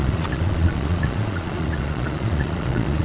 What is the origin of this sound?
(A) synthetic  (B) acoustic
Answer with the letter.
A